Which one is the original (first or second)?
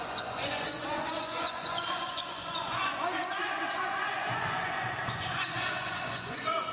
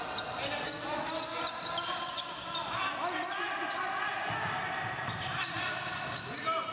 second